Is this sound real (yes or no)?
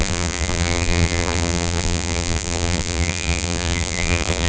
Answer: no